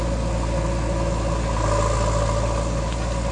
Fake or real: real